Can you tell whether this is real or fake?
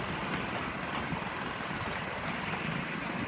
real